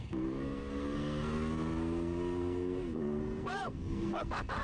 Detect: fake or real fake